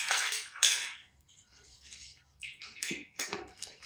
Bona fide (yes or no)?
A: no